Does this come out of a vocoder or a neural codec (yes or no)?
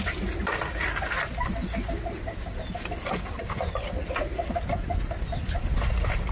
no